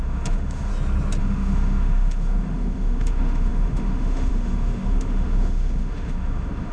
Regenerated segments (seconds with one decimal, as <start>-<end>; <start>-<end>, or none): 0.0-0.7; 1.2-6.7